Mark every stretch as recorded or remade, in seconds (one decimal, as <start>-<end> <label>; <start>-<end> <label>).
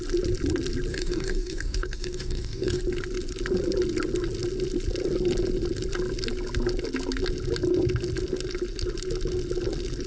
0.0-0.9 recorded; 0.9-2.8 remade; 2.8-10.1 recorded